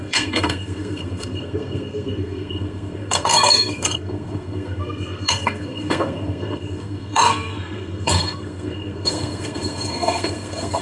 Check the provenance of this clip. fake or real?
fake